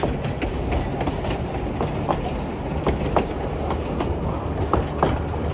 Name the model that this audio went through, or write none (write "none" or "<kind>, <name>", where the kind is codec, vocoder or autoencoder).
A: none